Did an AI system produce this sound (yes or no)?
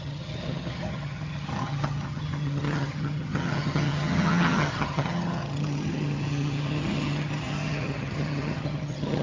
yes